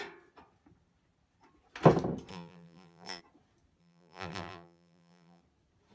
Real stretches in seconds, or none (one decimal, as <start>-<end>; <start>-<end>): 0.0-2.3; 3.2-3.8; 5.4-5.9